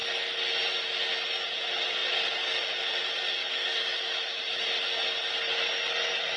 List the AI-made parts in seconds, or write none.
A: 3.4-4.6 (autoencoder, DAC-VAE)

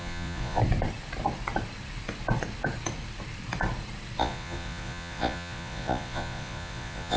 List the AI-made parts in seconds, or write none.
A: 0.0-0.6 (vocoder, Vocos); 4.2-7.2

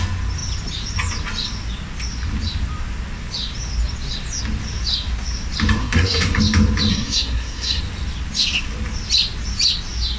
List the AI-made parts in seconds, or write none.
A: 5.8-6.4 (codec, SNAC); 6.9-7.8

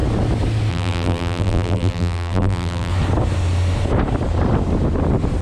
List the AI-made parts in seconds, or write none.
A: 0.7-2.9 (vocoder, BigVGAN v2)